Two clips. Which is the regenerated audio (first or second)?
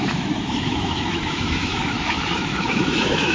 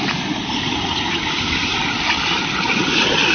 first